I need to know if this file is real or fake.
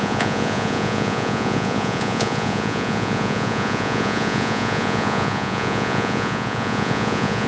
fake